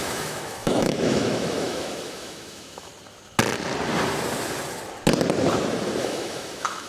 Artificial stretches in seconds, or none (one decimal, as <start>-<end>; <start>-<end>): 0.0-2.9; 6.0-6.9